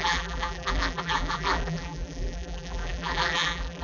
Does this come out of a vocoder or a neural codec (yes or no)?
yes